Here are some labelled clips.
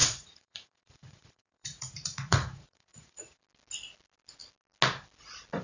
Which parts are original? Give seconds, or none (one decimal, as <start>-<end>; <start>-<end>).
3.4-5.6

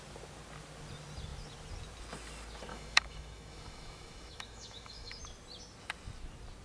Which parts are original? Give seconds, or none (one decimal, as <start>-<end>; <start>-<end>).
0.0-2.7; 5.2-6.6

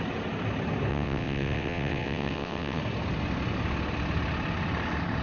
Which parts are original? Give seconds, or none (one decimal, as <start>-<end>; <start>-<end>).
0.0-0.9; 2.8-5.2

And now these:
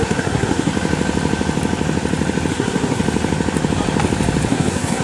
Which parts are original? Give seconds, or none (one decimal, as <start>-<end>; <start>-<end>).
0.7-2.5; 3.0-4.5

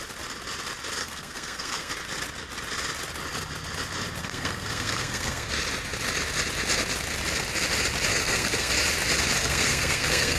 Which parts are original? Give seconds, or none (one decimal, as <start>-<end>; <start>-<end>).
0.0-1.0; 1.9-4.2; 5.5-8.1; 8.7-9.4

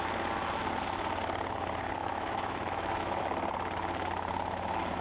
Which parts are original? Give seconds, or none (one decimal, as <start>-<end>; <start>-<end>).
0.0-2.0; 3.2-5.0